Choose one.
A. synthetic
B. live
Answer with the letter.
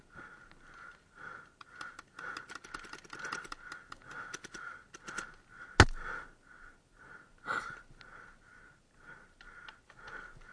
B